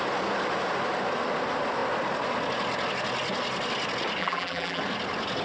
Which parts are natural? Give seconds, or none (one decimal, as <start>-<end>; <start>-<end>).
0.0-4.2; 4.8-5.4